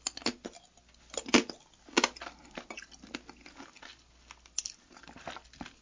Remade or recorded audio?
recorded